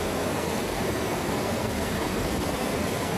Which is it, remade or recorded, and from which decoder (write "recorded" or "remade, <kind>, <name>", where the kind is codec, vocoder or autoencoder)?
remade, codec, SNAC